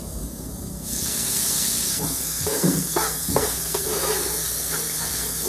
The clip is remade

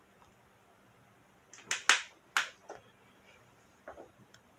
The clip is recorded